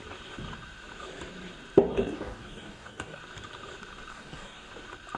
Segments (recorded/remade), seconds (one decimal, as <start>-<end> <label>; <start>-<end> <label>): 0.0-1.9 recorded; 1.9-3.2 remade; 3.2-4.1 recorded; 4.1-4.7 remade; 4.7-5.2 recorded